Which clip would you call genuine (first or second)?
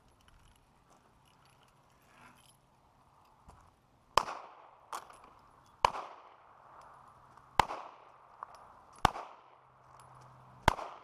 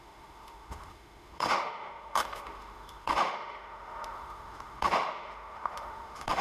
first